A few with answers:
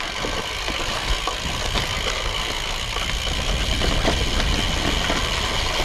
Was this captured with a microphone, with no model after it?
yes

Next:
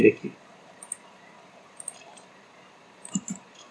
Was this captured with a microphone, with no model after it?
no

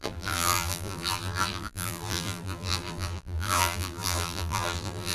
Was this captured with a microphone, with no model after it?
no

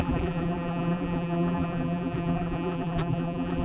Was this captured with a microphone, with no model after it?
no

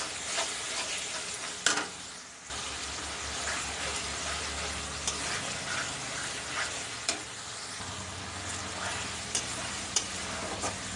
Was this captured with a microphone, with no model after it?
yes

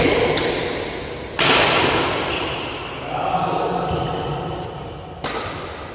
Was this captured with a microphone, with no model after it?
yes